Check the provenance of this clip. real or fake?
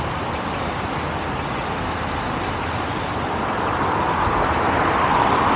real